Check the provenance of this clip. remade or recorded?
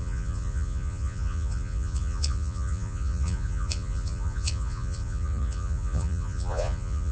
remade